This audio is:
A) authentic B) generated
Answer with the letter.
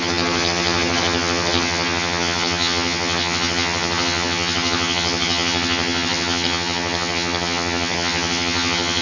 B